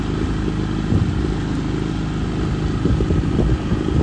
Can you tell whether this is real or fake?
real